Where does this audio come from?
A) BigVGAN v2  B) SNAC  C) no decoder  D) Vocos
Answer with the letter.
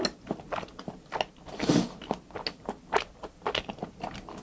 C